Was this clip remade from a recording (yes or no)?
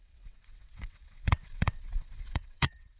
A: yes